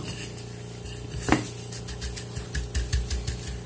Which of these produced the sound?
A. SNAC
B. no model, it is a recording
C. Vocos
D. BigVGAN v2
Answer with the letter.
B